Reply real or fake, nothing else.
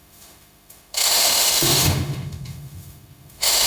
fake